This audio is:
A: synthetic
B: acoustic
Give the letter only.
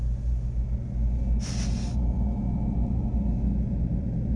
B